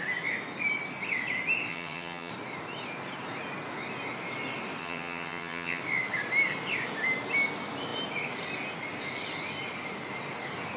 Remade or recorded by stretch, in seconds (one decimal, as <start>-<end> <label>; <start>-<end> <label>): 0.0-1.7 recorded; 1.7-2.3 remade; 2.3-4.8 recorded; 4.8-5.8 remade; 5.8-10.8 recorded